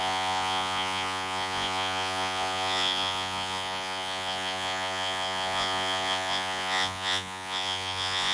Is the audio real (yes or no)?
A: no